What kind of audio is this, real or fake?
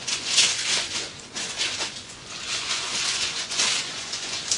fake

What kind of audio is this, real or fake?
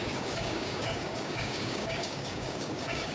fake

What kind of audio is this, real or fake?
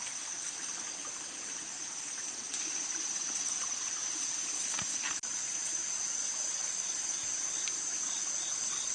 real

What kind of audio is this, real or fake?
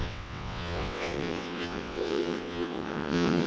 fake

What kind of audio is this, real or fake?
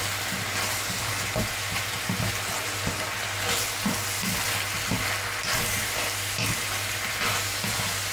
real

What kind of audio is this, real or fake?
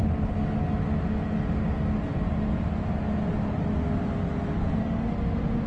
real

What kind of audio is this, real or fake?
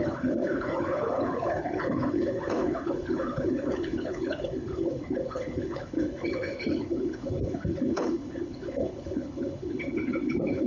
fake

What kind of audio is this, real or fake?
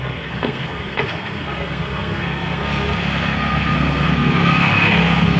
fake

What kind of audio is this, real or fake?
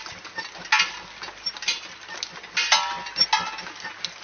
real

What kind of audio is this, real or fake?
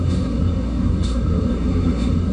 fake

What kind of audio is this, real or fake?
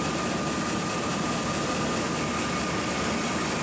real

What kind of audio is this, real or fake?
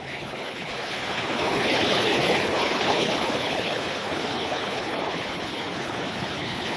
fake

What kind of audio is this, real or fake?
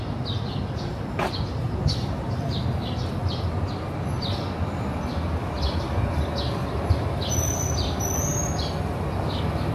real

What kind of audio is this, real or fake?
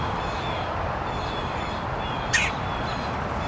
real